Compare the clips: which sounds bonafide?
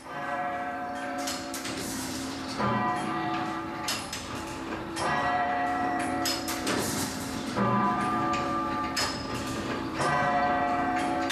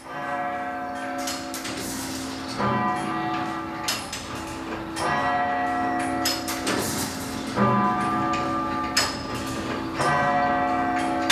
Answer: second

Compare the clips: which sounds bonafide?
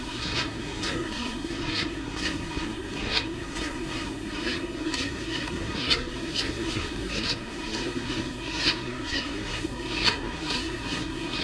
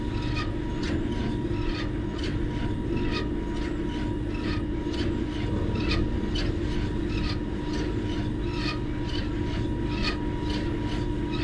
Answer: second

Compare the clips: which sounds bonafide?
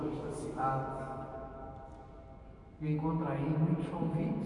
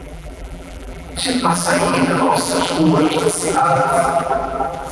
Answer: first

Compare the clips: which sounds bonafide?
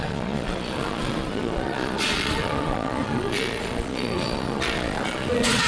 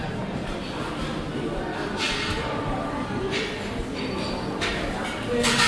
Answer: second